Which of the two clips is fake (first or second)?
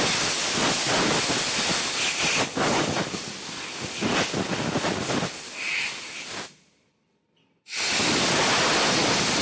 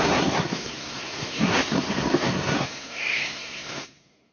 second